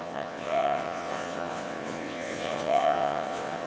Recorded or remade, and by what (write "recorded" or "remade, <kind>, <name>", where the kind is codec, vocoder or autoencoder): remade, vocoder, WaveNeXt